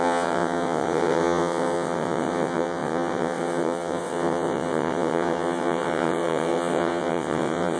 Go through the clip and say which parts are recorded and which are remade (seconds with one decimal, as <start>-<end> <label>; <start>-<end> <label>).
0.0-7.8 remade